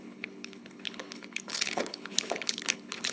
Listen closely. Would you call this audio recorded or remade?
remade